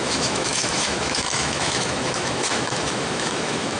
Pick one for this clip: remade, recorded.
remade